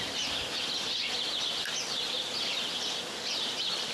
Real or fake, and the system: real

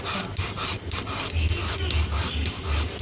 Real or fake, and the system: real